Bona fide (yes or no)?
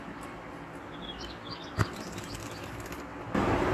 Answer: yes